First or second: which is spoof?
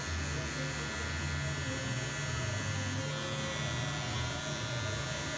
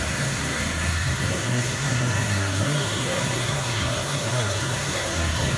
second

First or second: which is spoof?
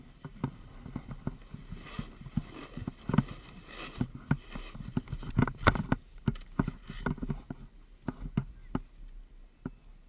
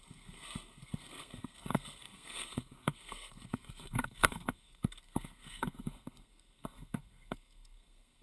second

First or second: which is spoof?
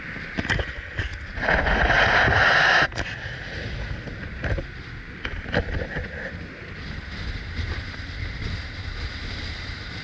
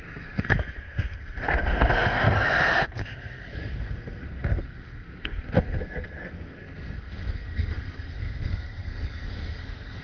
second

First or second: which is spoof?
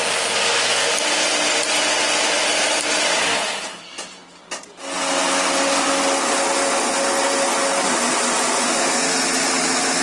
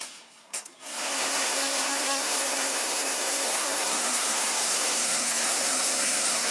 second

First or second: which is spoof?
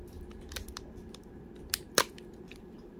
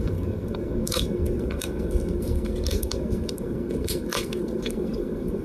second